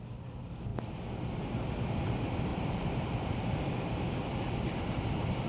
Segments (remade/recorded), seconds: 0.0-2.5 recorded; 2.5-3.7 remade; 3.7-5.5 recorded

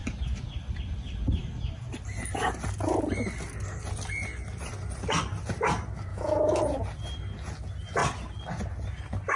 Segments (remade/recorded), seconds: 0.0-6.1 recorded; 6.1-6.6 remade; 6.6-9.4 recorded